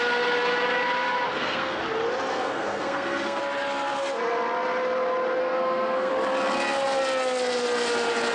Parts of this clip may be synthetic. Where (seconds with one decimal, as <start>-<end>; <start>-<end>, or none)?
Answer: 1.3-1.8; 2.3-3.4; 5.4-6.1